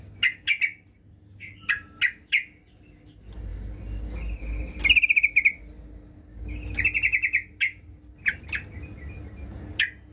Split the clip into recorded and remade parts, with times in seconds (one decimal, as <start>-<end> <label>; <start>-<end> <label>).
0.0-10.1 recorded